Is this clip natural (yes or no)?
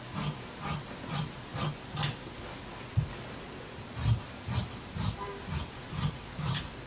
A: yes